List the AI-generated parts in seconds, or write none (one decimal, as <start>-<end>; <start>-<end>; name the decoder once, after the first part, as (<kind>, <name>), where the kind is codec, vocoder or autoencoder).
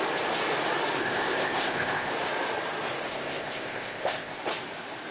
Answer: 1.0-2.1 (codec, ZipCodec); 3.1-4.4